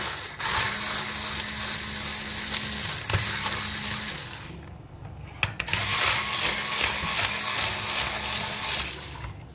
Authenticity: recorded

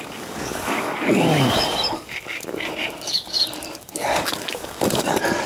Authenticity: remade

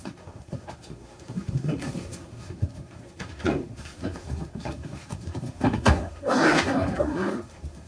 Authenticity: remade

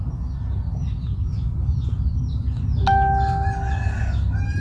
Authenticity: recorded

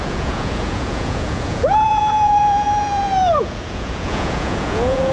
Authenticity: remade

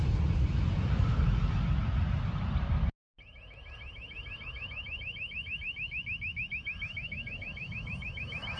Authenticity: recorded